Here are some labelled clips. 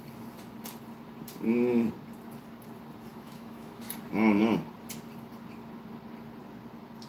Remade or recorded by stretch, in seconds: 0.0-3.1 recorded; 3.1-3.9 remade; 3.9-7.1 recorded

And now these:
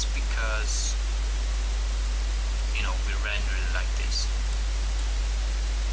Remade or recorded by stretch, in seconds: 0.0-5.9 recorded

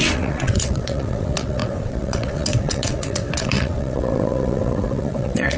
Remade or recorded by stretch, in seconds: 0.0-5.6 remade

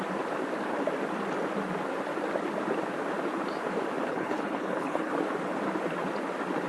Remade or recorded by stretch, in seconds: 0.0-4.1 recorded; 4.1-5.1 remade; 5.1-6.7 recorded

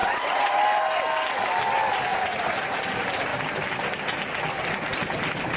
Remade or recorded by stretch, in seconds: 0.0-0.6 remade; 0.6-2.1 recorded; 2.1-2.8 remade; 2.8-5.6 recorded

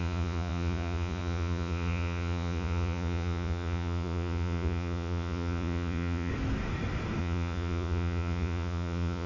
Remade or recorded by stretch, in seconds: 0.0-6.3 remade; 6.3-7.2 recorded; 7.2-9.3 remade